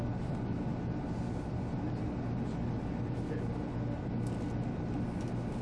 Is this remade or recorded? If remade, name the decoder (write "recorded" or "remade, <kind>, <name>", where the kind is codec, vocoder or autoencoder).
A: recorded